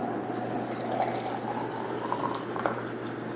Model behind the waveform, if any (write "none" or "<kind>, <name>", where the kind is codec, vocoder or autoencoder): none